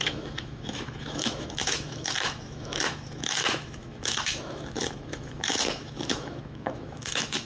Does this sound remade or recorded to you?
remade